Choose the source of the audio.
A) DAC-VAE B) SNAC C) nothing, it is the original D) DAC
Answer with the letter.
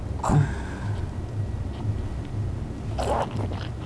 C